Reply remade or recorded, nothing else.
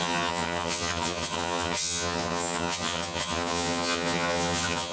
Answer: remade